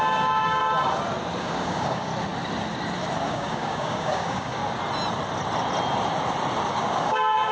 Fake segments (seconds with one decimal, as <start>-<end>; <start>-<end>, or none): 0.0-0.6; 1.4-2.1; 3.2-4.6; 6.8-7.5